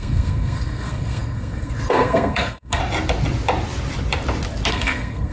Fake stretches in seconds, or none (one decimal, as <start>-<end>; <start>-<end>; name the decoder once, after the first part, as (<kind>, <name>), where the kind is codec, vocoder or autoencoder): 0.0-2.8 (codec, SNAC); 4.7-5.3